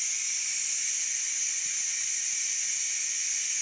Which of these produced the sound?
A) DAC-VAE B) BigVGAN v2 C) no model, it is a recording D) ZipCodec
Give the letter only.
C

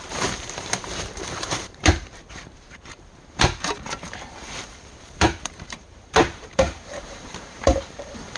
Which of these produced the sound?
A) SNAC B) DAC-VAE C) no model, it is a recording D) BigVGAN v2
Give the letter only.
D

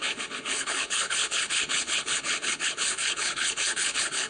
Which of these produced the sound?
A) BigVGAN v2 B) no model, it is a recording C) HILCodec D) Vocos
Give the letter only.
C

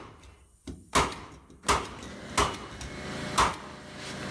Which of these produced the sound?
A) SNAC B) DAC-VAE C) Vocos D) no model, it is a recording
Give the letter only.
D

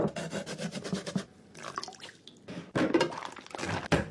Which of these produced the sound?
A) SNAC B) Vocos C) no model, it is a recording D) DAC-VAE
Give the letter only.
C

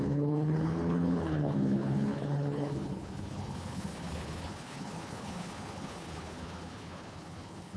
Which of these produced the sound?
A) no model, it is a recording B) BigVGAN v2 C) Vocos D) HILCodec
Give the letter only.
D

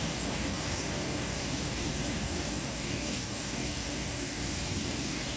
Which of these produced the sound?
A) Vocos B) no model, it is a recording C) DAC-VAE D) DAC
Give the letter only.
D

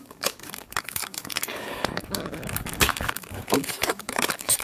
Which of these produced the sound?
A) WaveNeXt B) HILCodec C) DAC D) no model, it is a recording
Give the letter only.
C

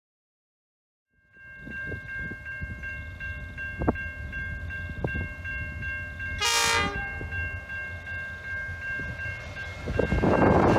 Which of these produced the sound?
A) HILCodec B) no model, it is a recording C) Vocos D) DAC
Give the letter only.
B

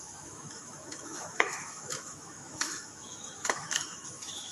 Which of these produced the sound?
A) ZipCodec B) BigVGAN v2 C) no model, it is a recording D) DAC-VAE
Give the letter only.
D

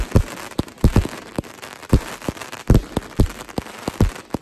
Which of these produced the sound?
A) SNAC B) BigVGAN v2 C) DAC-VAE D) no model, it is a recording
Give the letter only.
B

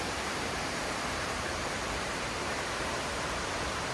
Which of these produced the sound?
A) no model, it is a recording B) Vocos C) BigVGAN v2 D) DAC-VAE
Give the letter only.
C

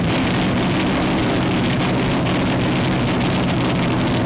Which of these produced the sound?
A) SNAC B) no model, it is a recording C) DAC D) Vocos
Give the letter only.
B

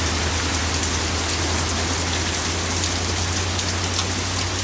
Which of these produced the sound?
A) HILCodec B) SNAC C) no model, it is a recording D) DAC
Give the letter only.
C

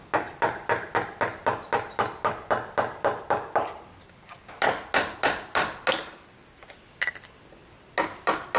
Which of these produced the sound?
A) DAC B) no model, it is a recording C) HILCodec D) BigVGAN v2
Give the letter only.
B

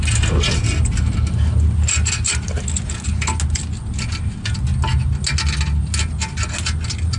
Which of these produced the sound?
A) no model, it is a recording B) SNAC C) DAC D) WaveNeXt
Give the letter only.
A